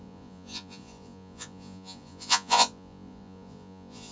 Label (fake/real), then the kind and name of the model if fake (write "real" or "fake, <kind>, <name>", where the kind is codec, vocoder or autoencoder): fake, vocoder, Vocos